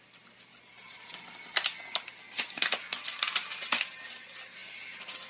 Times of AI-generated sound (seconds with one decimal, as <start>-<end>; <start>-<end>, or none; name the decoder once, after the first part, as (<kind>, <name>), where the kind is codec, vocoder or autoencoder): none